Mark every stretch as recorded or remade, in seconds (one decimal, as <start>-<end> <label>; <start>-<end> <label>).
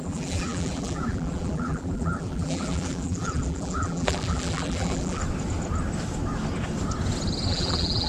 0.0-5.2 remade; 5.2-7.5 recorded; 7.5-8.1 remade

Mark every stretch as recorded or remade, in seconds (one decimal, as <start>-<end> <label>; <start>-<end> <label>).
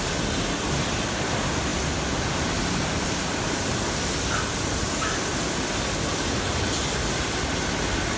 0.0-8.2 recorded